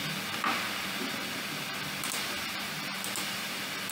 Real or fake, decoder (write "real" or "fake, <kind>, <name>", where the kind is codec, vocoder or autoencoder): real